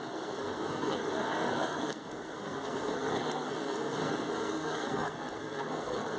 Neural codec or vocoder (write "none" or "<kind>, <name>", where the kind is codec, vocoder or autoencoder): codec, SNAC